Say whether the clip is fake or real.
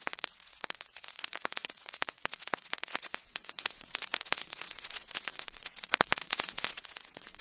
fake